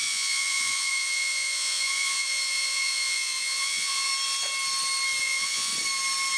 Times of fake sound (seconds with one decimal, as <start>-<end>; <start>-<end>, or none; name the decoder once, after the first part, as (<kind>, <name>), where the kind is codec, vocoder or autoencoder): 0.0-4.1 (vocoder, Vocos); 5.2-5.7